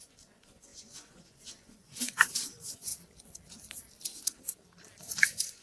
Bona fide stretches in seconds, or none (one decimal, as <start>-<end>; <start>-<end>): 2.9-5.0